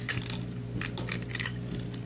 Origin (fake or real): real